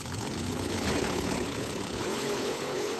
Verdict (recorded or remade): remade